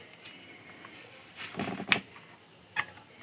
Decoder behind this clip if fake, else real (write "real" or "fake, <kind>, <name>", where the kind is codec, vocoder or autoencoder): real